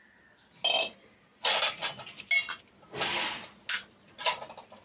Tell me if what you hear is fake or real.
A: real